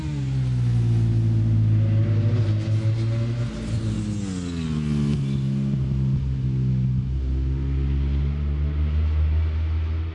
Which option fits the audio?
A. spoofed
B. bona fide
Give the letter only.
B